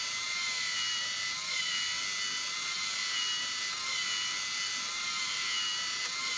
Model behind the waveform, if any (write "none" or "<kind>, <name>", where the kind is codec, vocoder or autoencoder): none